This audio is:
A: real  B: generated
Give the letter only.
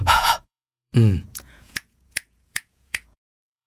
B